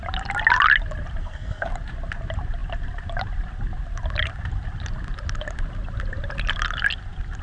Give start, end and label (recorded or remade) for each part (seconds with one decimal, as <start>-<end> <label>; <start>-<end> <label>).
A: 0.0-1.2 recorded; 1.2-1.7 remade; 1.7-7.4 recorded